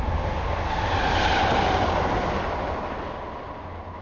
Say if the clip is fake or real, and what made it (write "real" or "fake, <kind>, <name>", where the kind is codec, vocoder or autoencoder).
real